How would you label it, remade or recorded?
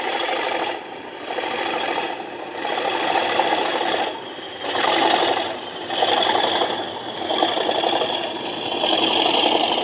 remade